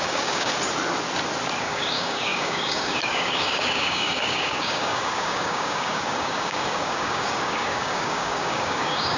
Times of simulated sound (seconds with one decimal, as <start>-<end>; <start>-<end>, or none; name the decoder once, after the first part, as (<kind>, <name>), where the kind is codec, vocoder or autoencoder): 0.0-0.5 (codec, DAC); 1.6-9.2

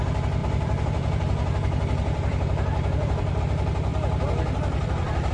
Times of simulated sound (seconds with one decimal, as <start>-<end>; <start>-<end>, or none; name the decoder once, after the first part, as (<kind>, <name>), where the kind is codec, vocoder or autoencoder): 0.4-3.4 (vocoder, BigVGAN v2); 3.9-5.3

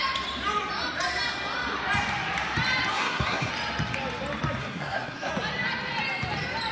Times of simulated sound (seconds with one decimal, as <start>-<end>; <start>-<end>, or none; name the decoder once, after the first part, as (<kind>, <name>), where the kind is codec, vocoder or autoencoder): 2.9-3.5 (codec, SNAC); 4.6-5.3

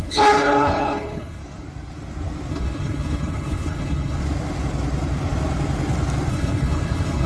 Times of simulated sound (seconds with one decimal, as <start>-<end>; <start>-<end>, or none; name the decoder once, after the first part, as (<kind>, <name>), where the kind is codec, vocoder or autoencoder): 0.0-1.4 (codec, HILCodec); 2.5-4.2; 6.3-7.3